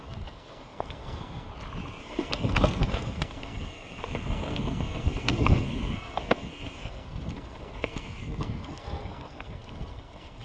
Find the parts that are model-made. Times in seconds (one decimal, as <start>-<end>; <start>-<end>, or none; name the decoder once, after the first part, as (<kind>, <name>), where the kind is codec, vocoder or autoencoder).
0.0-1.5 (codec, SNAC); 2.0-10.4